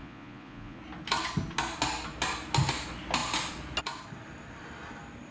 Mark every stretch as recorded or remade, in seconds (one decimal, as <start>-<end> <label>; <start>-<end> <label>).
0.0-0.8 remade; 0.8-5.3 recorded